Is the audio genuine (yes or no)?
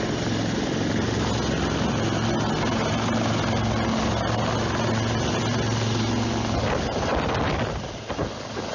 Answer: yes